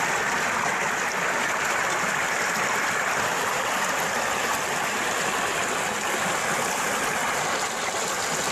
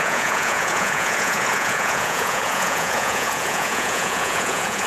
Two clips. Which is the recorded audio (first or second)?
first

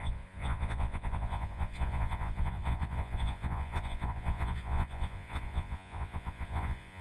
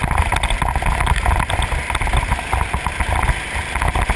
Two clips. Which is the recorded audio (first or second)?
second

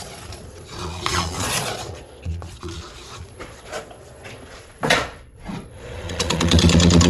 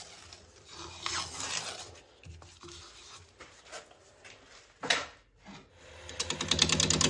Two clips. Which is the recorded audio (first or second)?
second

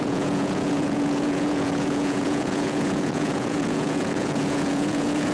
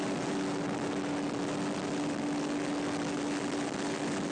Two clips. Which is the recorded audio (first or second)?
second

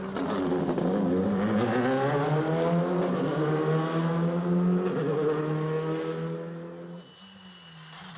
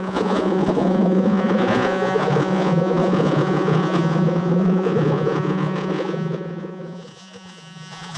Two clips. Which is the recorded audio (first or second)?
first